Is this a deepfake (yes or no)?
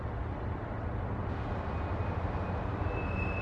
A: no